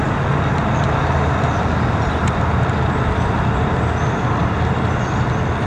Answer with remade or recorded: recorded